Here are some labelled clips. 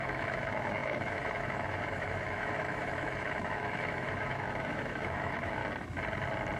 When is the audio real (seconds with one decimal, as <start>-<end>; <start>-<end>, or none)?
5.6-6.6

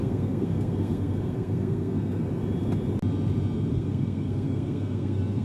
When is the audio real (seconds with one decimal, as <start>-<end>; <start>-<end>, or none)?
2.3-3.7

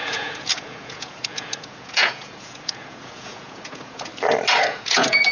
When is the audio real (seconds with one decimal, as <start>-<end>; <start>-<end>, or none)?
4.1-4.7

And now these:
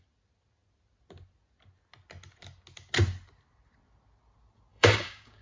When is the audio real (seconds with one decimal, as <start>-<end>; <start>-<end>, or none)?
0.0-4.7